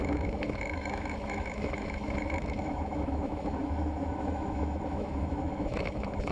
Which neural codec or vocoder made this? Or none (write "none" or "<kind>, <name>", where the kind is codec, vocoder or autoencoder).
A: autoencoder, DAC-VAE